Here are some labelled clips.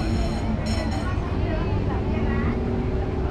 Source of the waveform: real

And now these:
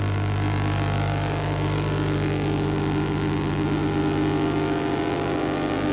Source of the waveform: fake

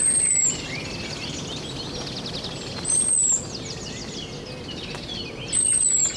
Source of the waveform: real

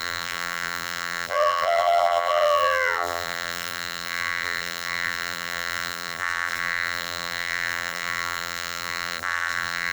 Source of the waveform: fake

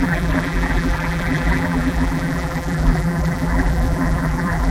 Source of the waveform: fake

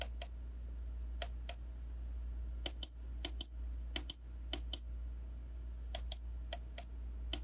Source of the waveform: real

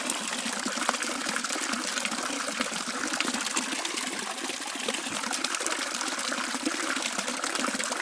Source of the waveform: real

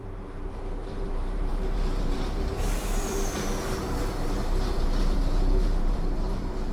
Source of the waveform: fake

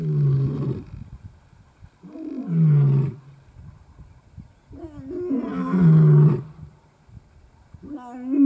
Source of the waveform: real